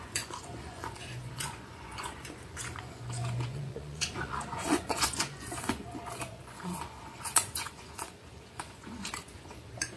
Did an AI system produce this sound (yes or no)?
yes